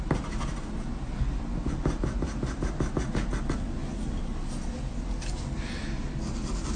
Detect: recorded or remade recorded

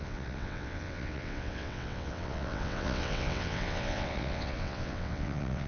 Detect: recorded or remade remade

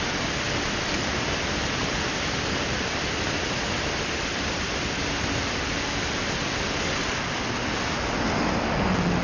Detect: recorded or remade recorded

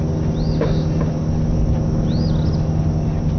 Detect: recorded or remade recorded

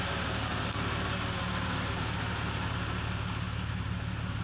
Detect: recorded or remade recorded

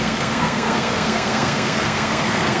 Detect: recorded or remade remade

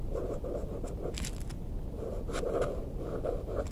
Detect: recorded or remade recorded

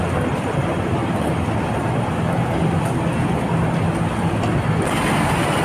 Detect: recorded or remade recorded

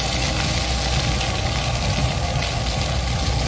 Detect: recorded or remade recorded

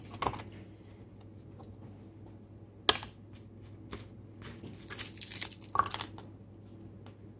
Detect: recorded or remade recorded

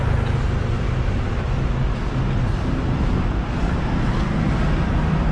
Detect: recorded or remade recorded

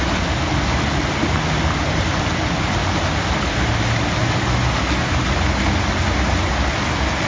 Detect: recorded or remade recorded